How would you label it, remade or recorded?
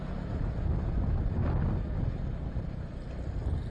recorded